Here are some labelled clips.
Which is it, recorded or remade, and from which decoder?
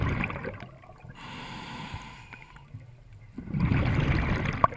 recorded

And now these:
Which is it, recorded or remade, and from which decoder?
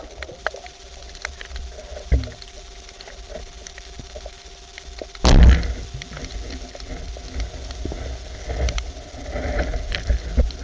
recorded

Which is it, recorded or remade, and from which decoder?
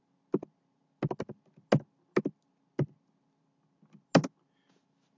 recorded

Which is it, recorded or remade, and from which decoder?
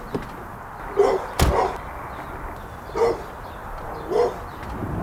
recorded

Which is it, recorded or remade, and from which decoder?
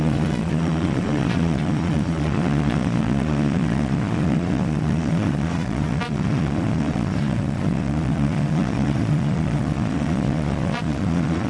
remade, vocoder, Vocos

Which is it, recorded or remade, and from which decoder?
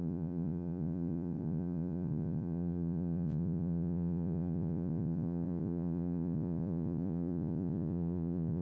remade, vocoder, Vocos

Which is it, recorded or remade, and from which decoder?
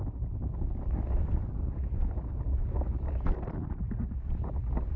recorded